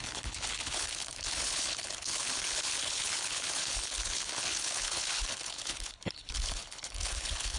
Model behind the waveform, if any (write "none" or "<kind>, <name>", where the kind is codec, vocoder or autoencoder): codec, HILCodec